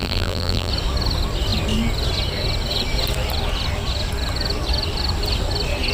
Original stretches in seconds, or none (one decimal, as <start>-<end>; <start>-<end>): 0.7-5.9